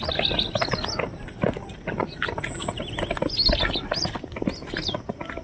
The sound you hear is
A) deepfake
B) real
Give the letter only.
B